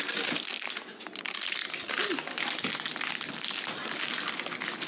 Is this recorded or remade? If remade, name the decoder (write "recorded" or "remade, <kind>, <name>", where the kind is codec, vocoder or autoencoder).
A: recorded